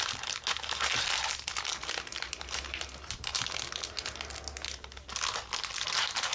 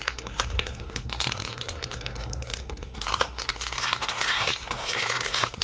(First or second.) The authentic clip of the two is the first